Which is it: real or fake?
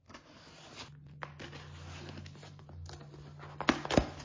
real